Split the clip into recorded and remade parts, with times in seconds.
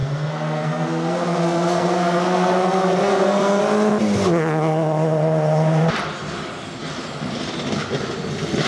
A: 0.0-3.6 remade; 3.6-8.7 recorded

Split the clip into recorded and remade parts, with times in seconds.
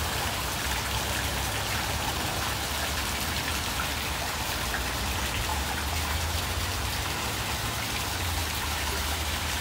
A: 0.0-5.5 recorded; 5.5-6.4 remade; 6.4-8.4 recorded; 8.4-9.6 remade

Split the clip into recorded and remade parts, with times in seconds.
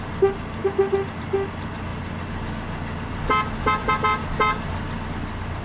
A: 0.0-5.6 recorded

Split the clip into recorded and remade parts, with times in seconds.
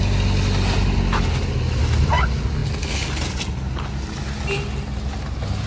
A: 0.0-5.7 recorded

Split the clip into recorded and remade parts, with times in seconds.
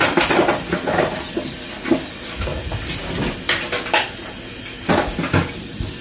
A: 0.0-6.0 recorded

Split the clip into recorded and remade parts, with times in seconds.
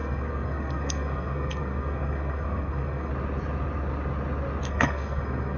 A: 0.0-3.1 remade; 3.1-4.7 recorded; 4.7-5.6 remade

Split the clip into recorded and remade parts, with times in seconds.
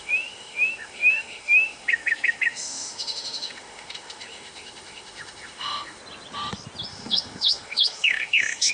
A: 0.0-6.0 remade; 6.0-6.9 recorded; 6.9-8.7 remade